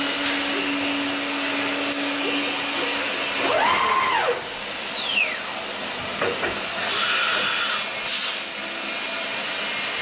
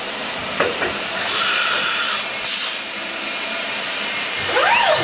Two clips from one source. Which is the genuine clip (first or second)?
first